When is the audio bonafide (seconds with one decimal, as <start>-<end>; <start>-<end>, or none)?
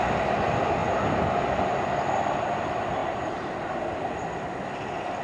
0.0-3.0; 3.8-5.2